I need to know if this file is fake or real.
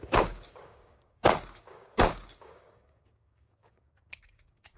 fake